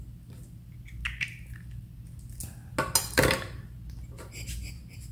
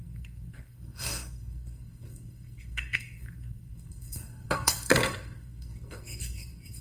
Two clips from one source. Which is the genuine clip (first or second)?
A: first